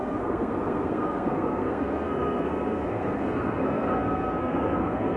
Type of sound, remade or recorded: remade